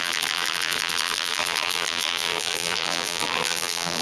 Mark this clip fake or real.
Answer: fake